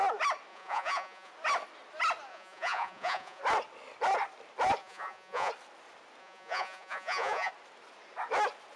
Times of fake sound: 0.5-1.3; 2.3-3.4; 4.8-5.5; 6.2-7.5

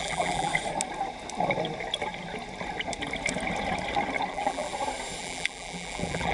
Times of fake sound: 0.0-0.5; 4.3-4.7; 5.2-6.3

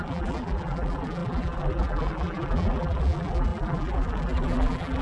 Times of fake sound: 0.0-5.0

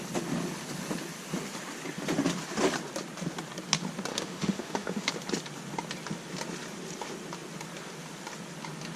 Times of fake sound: 4.1-5.1